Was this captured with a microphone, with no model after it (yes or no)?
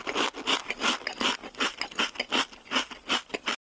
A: yes